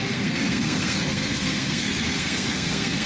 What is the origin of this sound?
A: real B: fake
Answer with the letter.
B